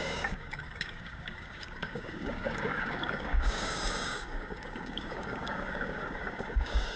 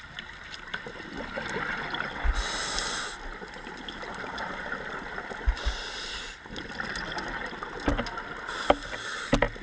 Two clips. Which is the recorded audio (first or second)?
second